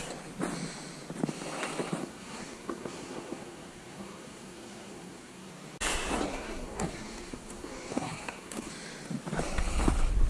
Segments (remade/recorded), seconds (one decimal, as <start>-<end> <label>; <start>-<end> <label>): 0.0-2.0 recorded; 2.0-5.5 remade; 5.5-6.3 recorded; 6.3-8.7 remade; 8.7-10.3 recorded